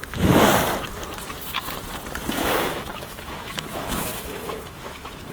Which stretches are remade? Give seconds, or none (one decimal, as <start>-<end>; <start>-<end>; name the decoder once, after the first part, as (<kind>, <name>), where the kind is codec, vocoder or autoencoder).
0.0-0.5 (autoencoder, DAC-VAE); 2.3-5.3